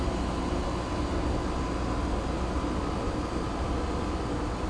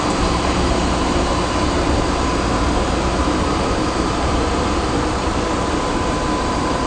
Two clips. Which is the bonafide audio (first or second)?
first